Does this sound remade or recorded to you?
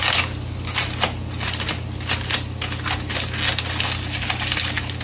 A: recorded